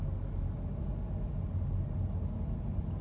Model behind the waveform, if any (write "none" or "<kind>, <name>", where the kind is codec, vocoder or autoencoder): none